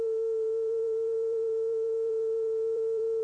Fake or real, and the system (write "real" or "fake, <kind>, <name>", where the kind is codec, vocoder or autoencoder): fake, vocoder, BigVGAN v2